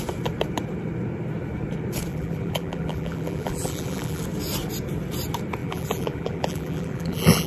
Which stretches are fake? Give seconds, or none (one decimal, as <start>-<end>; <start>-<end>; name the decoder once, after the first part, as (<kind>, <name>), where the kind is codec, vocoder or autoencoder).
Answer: 2.1-4.2 (vocoder, BigVGAN v2); 5.6-7.5